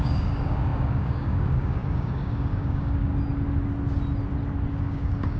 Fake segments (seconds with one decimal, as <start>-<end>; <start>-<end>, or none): 0.0-3.1; 4.7-5.4